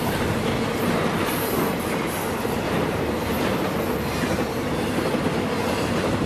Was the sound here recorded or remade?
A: recorded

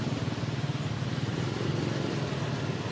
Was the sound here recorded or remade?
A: recorded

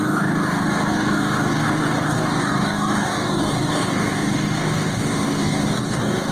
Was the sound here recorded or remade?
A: remade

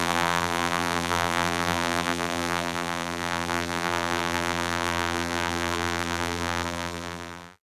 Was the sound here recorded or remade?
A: remade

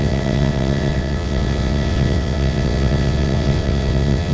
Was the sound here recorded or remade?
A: remade